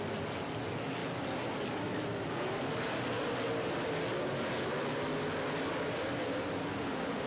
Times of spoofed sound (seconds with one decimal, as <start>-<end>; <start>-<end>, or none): 6.8-7.3